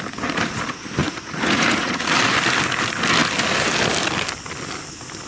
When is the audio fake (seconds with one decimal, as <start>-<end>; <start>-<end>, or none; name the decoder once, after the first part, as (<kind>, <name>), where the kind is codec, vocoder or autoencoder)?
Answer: 1.0-2.0 (vocoder, Vocos)